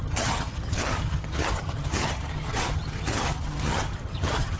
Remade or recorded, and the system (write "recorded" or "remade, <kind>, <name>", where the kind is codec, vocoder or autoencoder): remade, vocoder, HiFi-GAN